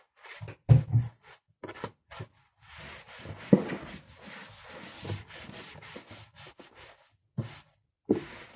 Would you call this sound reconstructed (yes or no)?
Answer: no